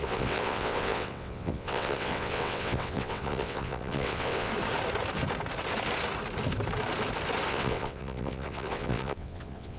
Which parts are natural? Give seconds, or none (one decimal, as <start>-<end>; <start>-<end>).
4.5-7.5